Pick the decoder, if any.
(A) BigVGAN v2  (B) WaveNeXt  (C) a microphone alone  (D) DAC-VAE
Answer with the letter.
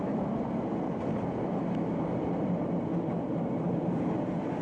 C